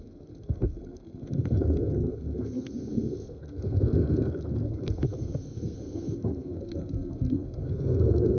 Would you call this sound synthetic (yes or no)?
yes